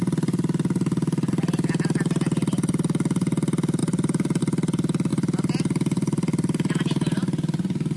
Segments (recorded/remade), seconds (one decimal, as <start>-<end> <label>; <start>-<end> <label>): 0.0-3.8 recorded; 3.8-4.4 remade; 4.4-5.1 recorded; 5.1-8.0 remade